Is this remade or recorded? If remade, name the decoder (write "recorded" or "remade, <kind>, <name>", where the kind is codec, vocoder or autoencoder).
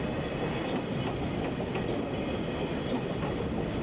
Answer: recorded